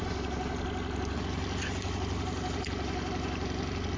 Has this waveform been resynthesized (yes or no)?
no